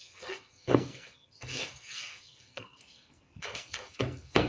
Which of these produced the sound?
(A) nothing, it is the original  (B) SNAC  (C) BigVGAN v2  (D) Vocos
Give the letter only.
B